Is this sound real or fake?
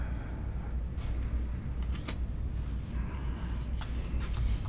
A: real